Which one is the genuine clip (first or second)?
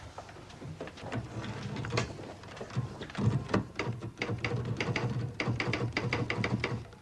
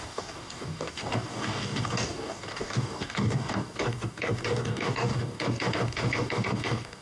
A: first